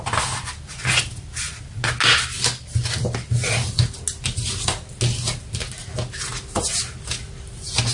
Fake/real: real